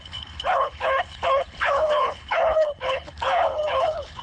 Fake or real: fake